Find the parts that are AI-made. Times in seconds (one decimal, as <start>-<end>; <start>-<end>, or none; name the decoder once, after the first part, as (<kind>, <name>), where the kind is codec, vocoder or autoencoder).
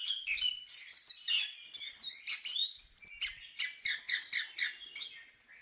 none